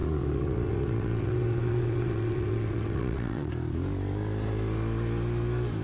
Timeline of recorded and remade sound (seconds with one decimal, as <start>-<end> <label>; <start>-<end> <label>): 0.0-3.5 remade; 3.5-5.8 recorded